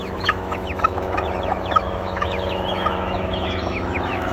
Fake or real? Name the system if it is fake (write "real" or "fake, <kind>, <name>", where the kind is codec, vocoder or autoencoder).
fake, autoencoder, DAC-VAE